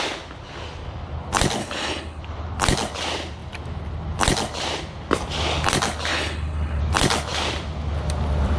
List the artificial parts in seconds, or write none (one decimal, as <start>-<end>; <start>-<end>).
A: 1.6-2.2; 6.1-6.8